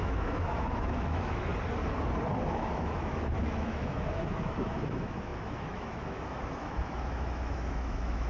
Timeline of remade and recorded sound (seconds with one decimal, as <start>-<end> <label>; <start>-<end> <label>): 0.0-1.5 remade; 1.5-2.5 recorded; 2.5-8.3 remade